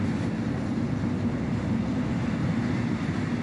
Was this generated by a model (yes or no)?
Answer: no